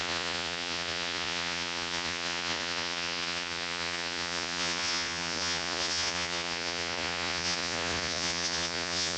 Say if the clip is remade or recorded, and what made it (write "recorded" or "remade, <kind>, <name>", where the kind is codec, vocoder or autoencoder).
remade, vocoder, Vocos